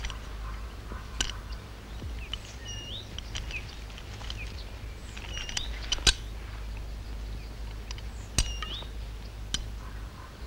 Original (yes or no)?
yes